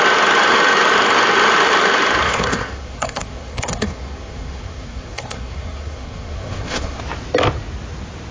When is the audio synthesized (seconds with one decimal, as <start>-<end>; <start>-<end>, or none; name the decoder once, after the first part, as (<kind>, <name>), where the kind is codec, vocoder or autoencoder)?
2.2-7.0 (codec, SNAC)